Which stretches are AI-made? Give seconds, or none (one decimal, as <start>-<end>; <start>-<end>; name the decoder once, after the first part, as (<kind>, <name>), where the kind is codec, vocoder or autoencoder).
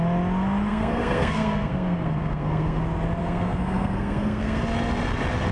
0.7-2.8 (codec, SNAC); 3.2-4.6